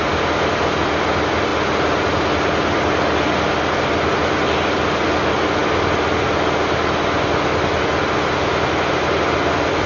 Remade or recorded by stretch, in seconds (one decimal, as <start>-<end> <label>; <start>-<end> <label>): 0.0-9.9 recorded